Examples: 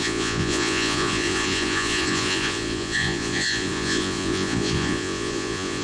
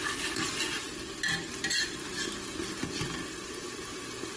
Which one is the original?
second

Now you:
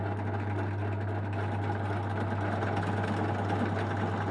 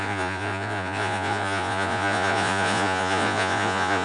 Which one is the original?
first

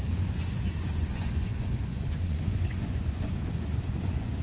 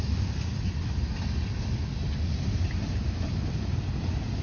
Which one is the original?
second